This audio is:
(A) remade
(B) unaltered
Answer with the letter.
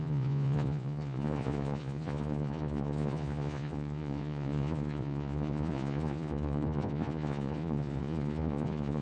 A